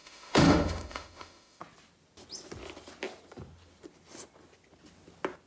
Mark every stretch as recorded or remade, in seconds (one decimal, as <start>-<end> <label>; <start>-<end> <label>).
0.0-1.6 remade; 1.6-5.5 recorded